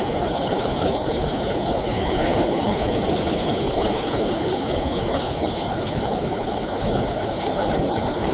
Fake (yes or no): yes